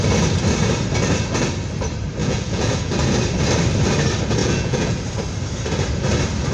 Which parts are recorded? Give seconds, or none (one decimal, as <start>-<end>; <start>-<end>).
0.0-2.2; 2.9-4.4; 5.0-6.5